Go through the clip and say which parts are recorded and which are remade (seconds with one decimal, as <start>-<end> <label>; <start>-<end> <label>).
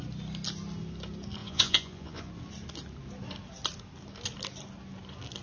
0.0-1.4 recorded; 1.4-2.3 remade; 2.3-5.4 recorded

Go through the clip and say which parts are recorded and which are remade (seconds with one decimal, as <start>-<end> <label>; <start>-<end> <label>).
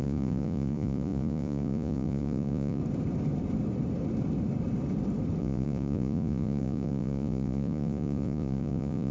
0.0-2.8 remade; 2.8-5.4 recorded; 5.4-9.1 remade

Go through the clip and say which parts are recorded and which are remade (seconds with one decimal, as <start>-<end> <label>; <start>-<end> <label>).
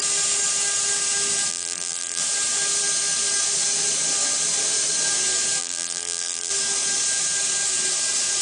0.0-1.5 recorded; 1.5-2.2 remade; 2.2-5.6 recorded; 5.6-6.5 remade; 6.5-8.4 recorded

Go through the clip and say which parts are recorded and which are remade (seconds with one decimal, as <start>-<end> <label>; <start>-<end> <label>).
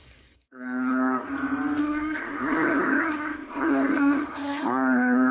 0.0-1.3 remade; 1.3-1.8 recorded; 1.8-5.3 remade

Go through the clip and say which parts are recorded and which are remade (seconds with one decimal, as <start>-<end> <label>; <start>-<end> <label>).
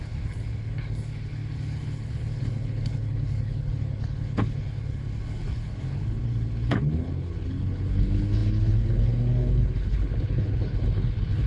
0.0-11.5 remade